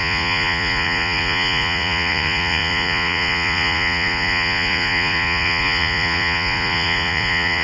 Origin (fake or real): fake